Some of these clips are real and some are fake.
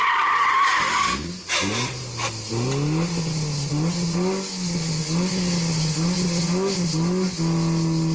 real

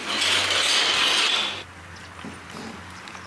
real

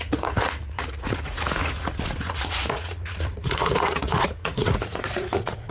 fake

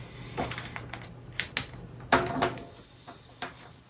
real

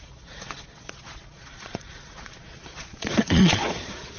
fake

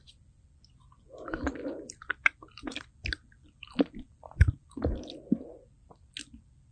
real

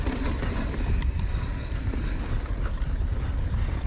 real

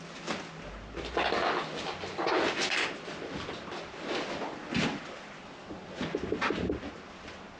real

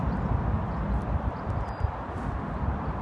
real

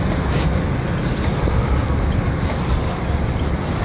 real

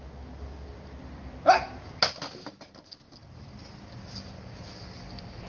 real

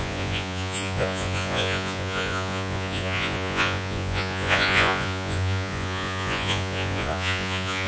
fake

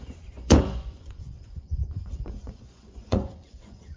fake